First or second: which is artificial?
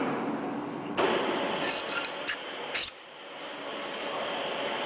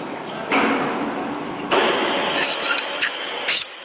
second